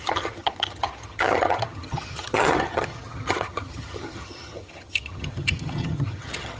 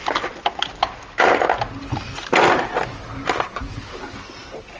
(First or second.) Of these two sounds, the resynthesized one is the first